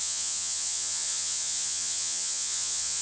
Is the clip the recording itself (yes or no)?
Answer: no